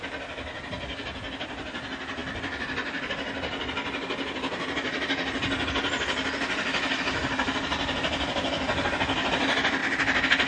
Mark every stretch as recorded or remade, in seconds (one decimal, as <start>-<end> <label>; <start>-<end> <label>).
0.0-10.5 recorded